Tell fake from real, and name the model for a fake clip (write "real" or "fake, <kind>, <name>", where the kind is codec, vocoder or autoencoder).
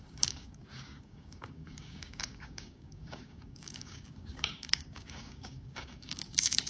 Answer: fake, codec, DAC